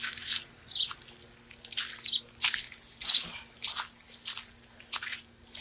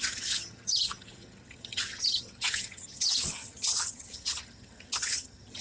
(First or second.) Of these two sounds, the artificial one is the second